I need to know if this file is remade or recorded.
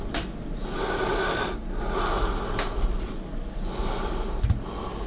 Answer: recorded